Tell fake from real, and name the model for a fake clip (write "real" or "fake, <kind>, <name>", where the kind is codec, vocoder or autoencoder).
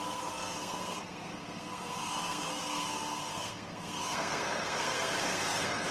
fake, codec, SNAC